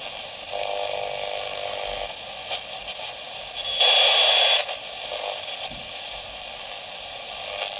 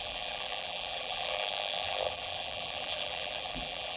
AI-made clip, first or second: second